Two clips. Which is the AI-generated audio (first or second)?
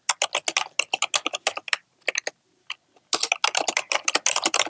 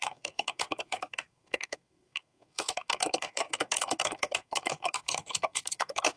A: second